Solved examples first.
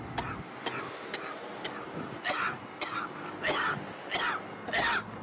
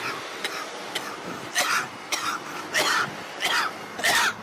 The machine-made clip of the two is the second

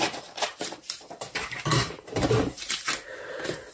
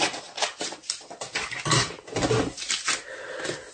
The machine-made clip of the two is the first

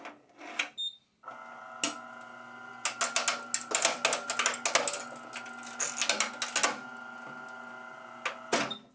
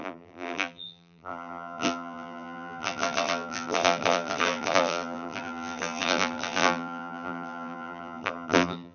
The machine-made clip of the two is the second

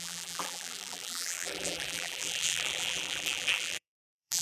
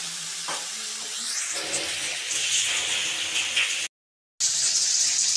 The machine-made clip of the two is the first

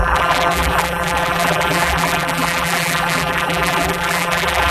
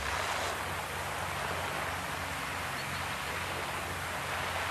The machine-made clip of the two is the first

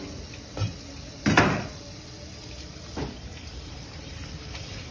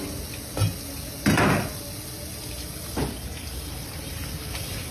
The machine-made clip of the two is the first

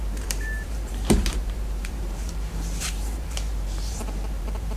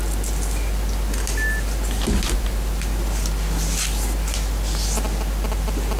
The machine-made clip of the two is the first